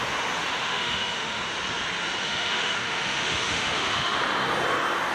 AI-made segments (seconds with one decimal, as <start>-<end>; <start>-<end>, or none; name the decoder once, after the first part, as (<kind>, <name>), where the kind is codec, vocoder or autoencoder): 0.6-1.4 (autoencoder, DAC-VAE); 2.2-4.2